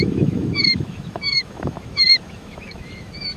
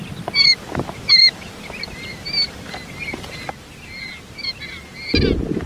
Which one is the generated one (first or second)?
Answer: first